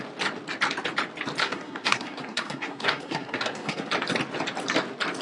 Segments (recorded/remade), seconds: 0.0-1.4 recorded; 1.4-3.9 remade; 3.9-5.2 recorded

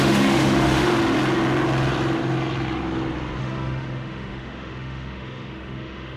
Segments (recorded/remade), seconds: 0.0-1.0 remade; 1.0-3.4 recorded; 3.4-6.2 remade